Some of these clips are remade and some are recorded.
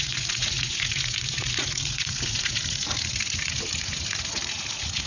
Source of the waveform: remade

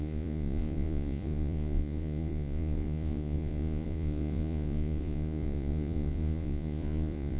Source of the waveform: remade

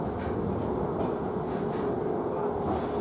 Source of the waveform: recorded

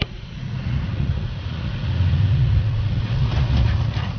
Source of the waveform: remade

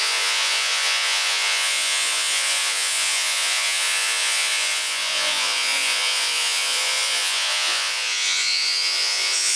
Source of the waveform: remade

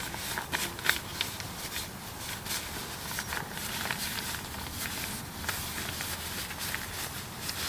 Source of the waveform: recorded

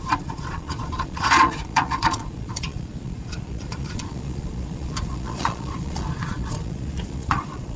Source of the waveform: remade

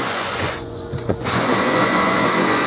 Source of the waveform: remade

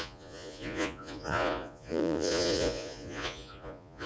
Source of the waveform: remade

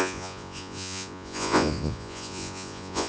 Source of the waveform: remade